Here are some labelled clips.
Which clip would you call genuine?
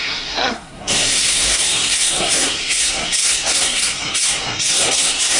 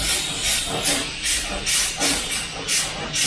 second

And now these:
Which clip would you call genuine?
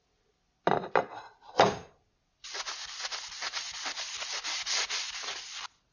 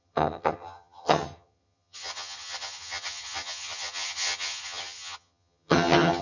first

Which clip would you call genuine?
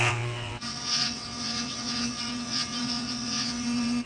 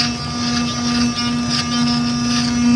second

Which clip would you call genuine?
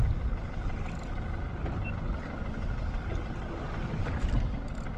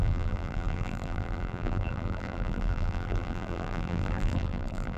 first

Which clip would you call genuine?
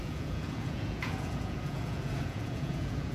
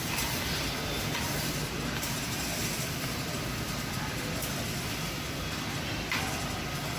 second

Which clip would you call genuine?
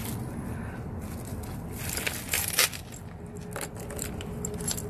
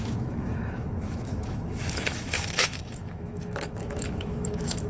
first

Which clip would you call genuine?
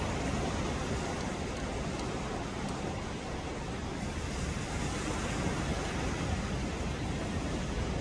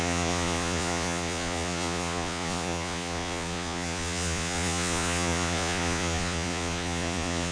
first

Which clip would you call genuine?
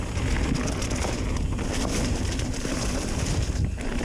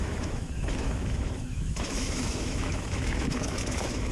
first